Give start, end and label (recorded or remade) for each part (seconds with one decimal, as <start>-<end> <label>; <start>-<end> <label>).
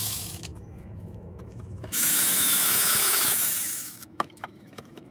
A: 0.0-5.1 remade